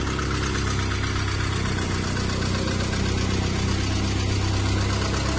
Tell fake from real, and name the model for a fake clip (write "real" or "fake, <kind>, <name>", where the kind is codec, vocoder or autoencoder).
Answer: real